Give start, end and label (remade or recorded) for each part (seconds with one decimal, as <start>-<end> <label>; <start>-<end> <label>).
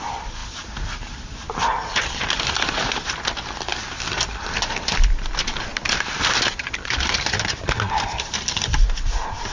0.0-0.4 recorded; 0.4-1.6 remade; 1.6-5.7 recorded; 5.7-7.7 remade; 7.7-9.5 recorded